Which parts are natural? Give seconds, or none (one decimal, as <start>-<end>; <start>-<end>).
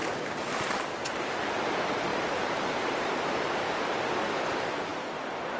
0.8-2.1; 3.5-5.6